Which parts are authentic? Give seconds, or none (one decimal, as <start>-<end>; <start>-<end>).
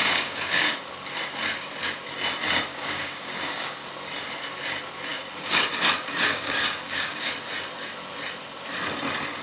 0.9-2.7; 3.9-5.1; 5.7-6.3; 7.3-9.4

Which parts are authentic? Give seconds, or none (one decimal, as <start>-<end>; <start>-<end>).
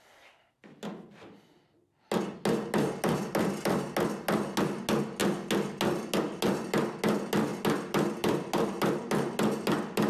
0.0-10.1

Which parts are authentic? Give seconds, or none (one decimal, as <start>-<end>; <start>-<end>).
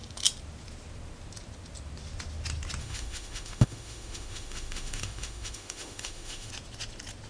0.0-2.8; 6.5-7.3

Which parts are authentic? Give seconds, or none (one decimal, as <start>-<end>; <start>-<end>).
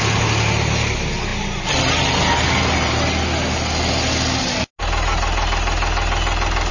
0.0-6.7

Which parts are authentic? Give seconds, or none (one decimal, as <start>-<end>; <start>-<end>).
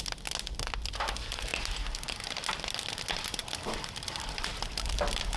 0.0-5.4